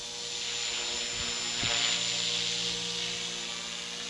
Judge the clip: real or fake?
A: real